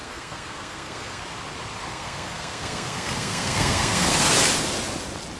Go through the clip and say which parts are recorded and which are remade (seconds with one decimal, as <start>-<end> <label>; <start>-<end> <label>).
0.0-1.2 remade; 1.2-1.9 recorded; 1.9-4.3 remade; 4.3-5.4 recorded